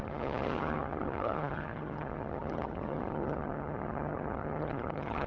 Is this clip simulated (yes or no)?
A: yes